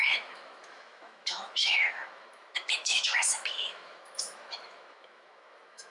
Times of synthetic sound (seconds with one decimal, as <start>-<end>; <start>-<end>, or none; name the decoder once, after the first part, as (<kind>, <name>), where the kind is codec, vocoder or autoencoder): 0.0-5.9 (autoencoder, DAC-VAE)